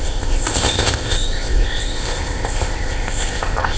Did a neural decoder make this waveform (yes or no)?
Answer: yes